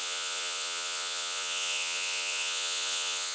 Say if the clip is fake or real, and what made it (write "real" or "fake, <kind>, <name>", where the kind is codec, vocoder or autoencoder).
fake, vocoder, Vocos